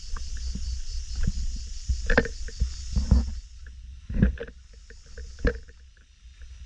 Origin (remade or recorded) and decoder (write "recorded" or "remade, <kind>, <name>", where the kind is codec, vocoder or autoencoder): recorded